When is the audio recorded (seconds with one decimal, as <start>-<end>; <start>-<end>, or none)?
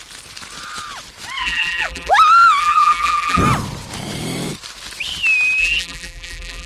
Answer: 0.0-1.4; 2.1-2.6; 3.4-5.6